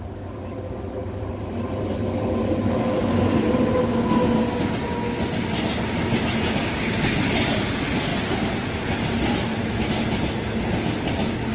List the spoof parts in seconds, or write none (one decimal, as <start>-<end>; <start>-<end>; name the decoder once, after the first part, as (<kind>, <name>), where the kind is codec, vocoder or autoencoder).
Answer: none